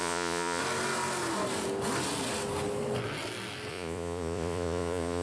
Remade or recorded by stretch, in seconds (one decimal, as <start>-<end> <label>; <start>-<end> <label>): 0.0-0.6 remade; 0.6-3.7 recorded; 3.7-5.2 remade